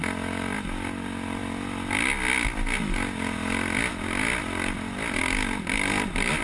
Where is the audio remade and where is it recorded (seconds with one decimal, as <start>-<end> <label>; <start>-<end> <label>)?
0.0-6.4 recorded